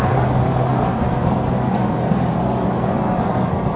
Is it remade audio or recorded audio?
remade